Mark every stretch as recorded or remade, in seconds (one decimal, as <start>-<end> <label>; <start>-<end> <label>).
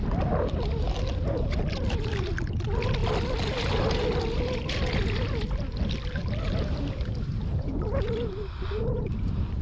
0.0-9.6 recorded